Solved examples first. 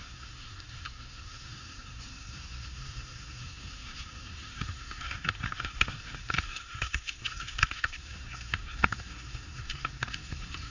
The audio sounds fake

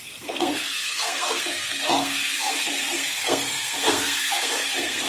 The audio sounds fake